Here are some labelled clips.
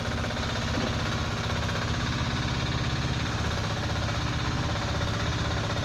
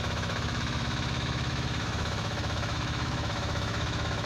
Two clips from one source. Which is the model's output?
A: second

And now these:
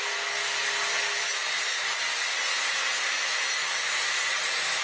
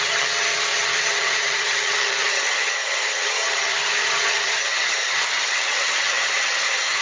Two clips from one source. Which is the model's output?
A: second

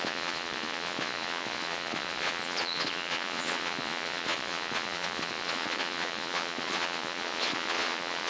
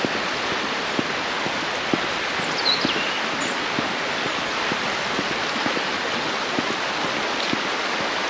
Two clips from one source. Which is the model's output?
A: first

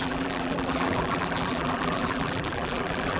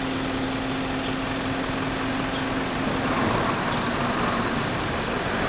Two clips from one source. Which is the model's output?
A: first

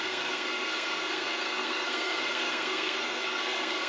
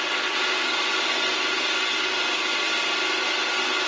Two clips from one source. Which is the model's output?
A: first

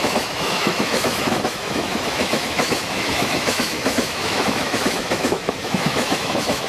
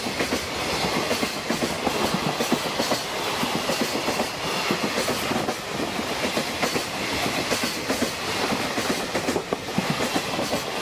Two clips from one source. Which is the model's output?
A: first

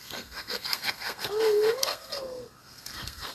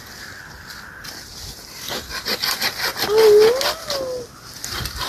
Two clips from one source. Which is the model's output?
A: first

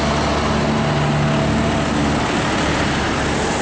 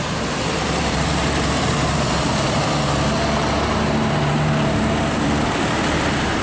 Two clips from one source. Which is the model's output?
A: second